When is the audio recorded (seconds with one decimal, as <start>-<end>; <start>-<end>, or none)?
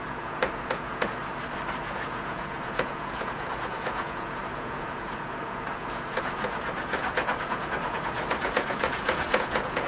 1.2-1.8